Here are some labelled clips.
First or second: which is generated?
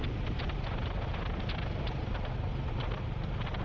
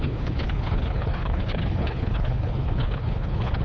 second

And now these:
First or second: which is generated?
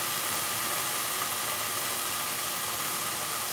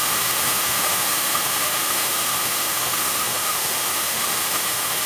second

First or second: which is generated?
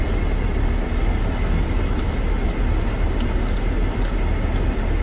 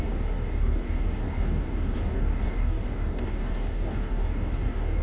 second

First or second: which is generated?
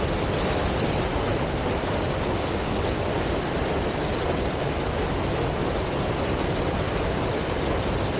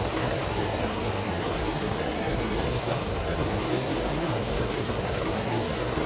second